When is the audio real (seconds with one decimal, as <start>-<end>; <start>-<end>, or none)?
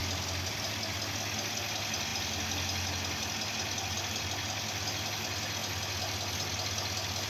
0.0-7.3